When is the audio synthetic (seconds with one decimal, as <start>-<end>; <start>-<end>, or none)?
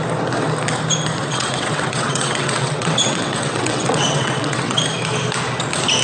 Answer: 1.2-4.8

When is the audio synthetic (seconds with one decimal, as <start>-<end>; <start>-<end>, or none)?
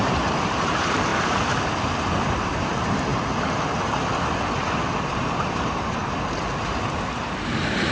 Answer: 0.0-1.1; 2.4-3.1; 5.1-6.0; 6.6-7.9